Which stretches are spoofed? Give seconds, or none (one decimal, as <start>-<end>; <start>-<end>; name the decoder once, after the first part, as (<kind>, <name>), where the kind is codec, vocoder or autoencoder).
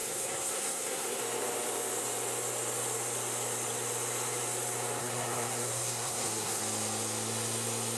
0.0-1.2 (codec, SNAC); 5.0-6.6